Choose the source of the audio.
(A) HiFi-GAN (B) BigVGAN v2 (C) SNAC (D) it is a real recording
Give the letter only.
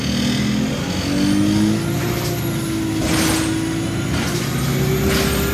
D